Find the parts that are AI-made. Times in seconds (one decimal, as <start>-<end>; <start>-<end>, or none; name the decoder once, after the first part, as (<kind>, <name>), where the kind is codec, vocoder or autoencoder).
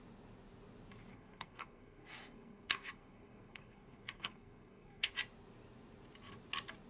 1.1-5.1 (codec, SNAC)